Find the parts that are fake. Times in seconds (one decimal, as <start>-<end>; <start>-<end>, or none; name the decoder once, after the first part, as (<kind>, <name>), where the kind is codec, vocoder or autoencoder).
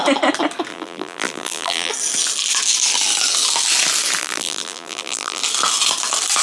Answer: 0.7-1.9 (vocoder, BigVGAN v2); 4.2-5.4